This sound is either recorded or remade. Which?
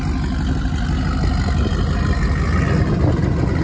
recorded